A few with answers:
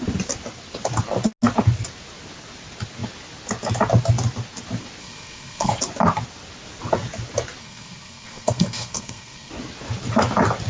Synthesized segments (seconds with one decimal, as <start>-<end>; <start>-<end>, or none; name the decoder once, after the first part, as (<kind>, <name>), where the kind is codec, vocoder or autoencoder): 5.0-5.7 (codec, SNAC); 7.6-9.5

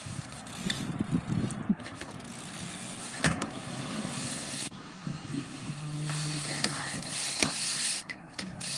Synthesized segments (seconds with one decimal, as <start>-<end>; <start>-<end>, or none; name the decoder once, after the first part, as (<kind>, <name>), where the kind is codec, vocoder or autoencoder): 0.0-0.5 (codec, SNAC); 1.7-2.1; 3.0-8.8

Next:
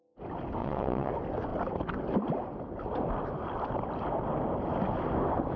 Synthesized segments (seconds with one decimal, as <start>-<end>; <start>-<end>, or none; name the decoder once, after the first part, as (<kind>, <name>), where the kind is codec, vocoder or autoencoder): 0.6-1.1 (vocoder, WaveNeXt)